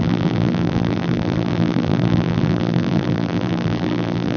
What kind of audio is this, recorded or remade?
remade